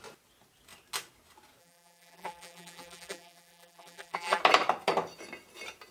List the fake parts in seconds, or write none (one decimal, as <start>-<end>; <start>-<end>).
1.6-4.4